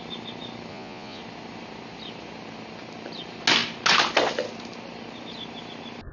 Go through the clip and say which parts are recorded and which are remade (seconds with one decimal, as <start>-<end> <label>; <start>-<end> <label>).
0.0-0.7 recorded; 0.7-1.2 remade; 1.2-6.1 recorded